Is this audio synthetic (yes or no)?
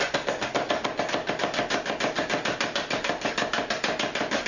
no